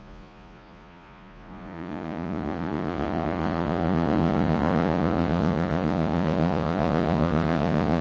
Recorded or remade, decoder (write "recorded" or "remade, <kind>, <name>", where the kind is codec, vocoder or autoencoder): remade, vocoder, Vocos